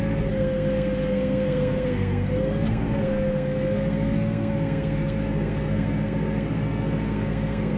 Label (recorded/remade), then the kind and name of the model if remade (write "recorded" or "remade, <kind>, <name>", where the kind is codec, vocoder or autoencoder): remade, codec, SNAC